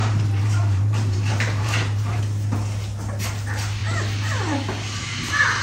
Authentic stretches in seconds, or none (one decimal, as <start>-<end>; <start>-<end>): 2.2-5.6